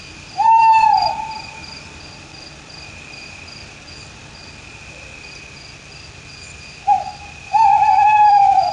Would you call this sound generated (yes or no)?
yes